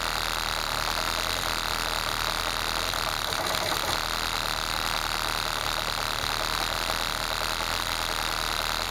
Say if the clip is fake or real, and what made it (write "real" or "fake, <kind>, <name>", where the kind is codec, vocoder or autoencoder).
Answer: real